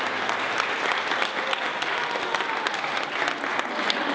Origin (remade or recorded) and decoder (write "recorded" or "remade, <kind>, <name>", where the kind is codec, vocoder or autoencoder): recorded